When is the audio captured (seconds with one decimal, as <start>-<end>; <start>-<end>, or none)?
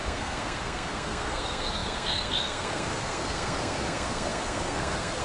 none